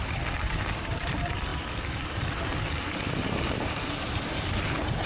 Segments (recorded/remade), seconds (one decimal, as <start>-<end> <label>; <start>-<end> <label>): 0.0-5.1 remade